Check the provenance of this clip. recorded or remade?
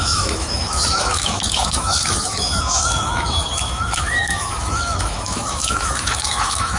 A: remade